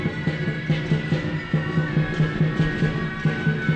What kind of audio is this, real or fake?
real